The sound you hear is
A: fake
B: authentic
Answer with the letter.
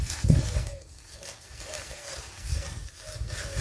A